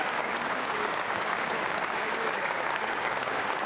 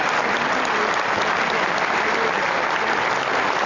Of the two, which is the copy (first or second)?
first